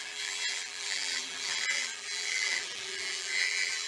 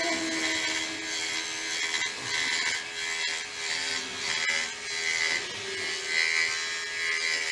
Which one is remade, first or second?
first